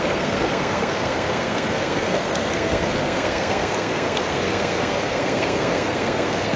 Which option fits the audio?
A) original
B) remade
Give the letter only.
B